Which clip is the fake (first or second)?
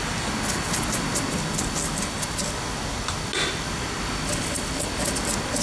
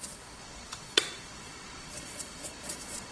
second